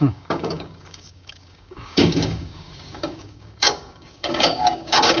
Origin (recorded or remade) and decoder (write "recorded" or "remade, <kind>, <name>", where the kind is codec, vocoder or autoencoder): remade, codec, DAC